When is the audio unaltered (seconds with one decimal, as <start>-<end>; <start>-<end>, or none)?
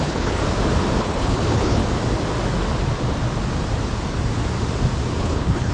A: 0.4-1.0; 1.8-5.2